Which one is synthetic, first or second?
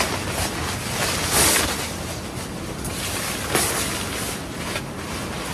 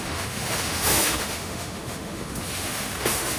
second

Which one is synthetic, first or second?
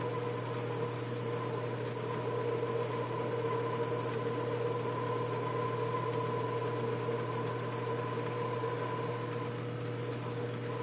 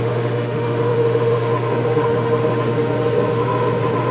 second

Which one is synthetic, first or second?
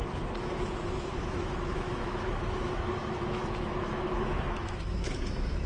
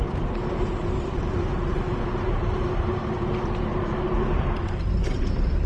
first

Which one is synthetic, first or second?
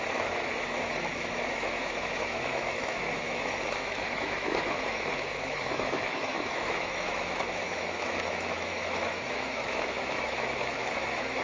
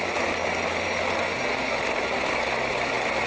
first